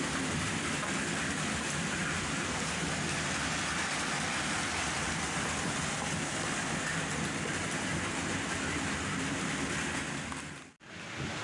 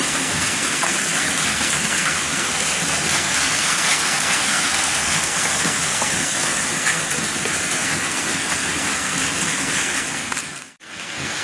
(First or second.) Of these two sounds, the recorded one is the first